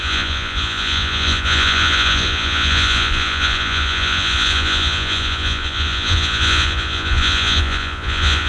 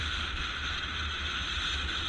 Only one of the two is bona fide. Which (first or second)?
second